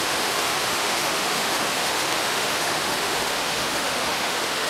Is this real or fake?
fake